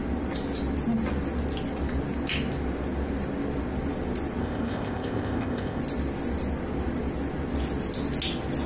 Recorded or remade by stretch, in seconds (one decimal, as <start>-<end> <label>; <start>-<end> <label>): 0.0-4.4 recorded; 4.4-5.8 remade; 5.8-8.7 recorded